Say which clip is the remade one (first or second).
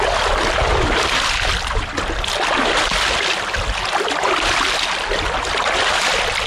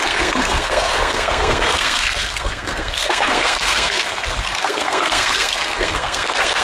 second